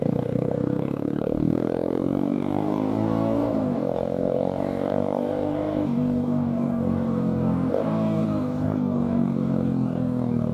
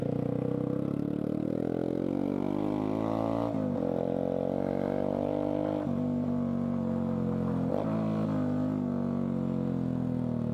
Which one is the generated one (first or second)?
first